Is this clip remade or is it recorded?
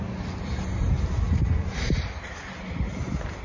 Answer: recorded